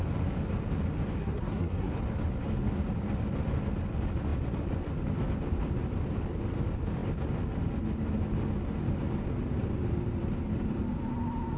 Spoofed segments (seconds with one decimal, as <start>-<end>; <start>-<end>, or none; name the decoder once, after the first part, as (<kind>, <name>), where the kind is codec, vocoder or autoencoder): 1.2-1.9 (codec, SNAC)